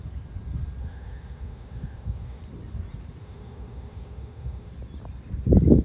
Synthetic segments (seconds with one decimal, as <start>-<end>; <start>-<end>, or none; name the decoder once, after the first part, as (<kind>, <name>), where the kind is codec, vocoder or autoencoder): 0.8-2.4 (autoencoder, DAC-VAE); 3.2-4.7